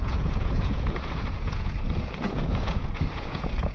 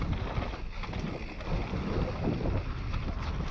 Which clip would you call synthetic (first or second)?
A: first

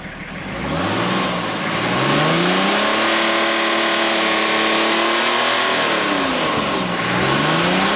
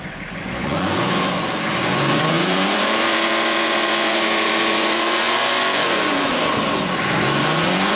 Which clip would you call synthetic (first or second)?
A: second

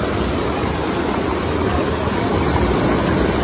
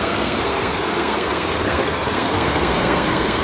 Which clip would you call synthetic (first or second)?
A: second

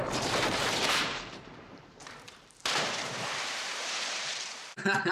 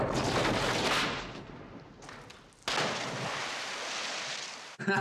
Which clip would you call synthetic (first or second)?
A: first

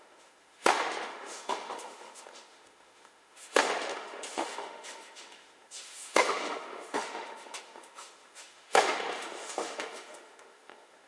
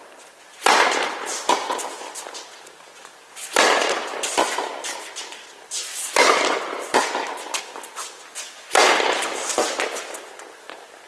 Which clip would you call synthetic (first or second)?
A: first